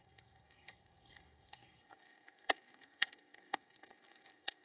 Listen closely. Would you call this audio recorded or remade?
remade